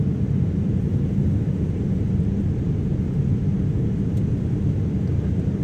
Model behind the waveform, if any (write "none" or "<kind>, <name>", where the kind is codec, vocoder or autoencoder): none